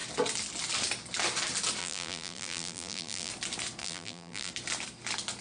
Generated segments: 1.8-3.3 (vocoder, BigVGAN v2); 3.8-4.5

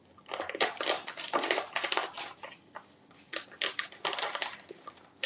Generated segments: none

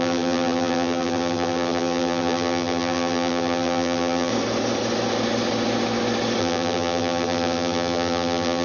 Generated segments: 0.0-4.3 (vocoder, BigVGAN v2); 6.4-8.6

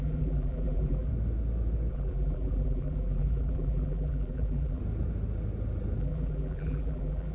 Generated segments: 0.0-1.1 (vocoder, BigVGAN v2); 1.9-4.8; 6.0-7.3

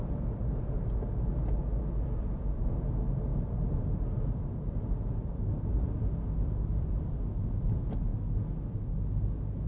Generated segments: 0.0-0.4 (vocoder, BigVGAN v2); 1.8-8.1

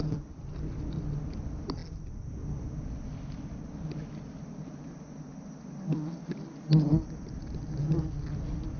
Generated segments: none